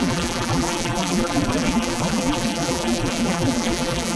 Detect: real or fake fake